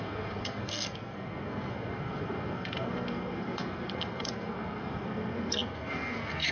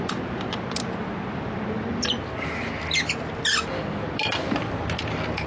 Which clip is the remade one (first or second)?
first